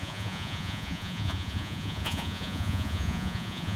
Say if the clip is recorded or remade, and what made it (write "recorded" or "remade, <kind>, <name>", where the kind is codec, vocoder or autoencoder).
remade, vocoder, Vocos